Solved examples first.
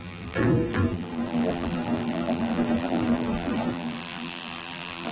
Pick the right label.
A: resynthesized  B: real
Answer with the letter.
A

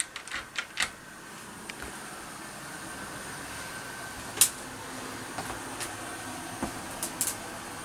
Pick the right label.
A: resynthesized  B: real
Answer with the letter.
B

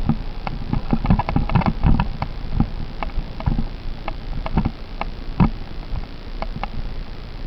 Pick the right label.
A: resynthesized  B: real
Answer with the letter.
B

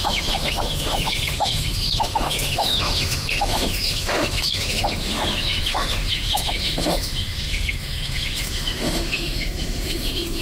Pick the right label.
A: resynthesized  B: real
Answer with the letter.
A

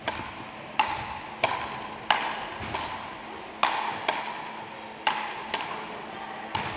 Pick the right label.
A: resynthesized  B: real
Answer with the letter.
B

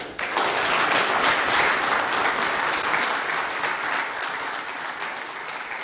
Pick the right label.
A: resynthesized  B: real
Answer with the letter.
B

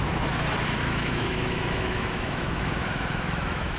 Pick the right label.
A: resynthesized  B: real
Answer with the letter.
A